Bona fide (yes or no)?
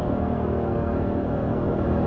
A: no